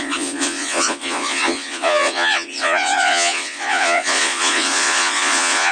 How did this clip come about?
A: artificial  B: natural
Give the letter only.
A